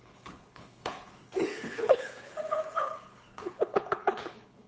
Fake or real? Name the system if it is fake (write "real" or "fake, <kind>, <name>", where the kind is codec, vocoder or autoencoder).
fake, codec, HILCodec